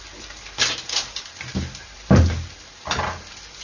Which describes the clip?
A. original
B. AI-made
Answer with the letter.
B